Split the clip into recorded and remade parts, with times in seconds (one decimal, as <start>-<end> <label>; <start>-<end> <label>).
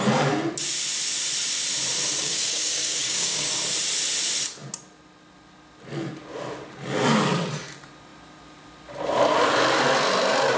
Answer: 0.0-2.2 recorded; 2.2-3.5 remade; 3.5-10.6 recorded